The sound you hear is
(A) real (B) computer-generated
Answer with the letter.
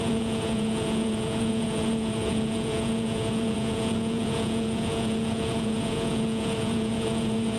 B